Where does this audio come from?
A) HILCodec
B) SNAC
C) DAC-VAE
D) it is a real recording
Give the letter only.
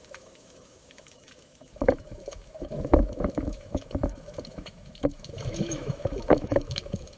C